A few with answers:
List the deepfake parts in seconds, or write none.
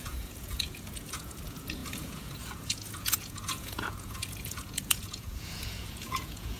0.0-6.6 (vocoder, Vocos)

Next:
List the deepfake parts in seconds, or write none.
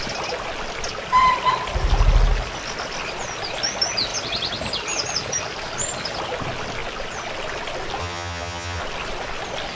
8.0-8.8 (vocoder, HiFi-GAN)